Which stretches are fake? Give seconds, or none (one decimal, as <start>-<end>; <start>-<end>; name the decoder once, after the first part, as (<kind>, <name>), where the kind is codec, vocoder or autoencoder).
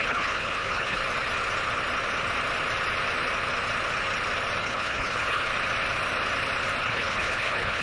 0.0-1.0 (codec, HILCodec); 4.6-5.5; 6.8-7.8